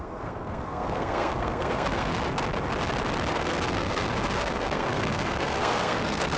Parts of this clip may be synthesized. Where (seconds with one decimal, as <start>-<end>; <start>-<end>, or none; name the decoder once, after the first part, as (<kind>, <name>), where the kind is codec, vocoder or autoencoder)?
0.0-2.1 (codec, SNAC); 3.3-6.4